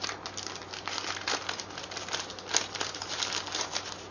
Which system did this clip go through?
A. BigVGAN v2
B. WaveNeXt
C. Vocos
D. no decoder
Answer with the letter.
D